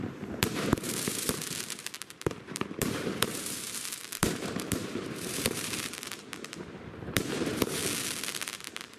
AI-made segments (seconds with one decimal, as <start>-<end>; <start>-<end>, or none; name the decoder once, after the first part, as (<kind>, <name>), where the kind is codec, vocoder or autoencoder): 0.0-7.8 (vocoder, BigVGAN v2); 8.4-9.0